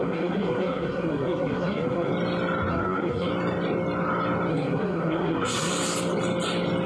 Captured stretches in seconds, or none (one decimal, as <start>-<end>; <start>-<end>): 2.1-2.7; 3.3-4.5; 5.7-6.9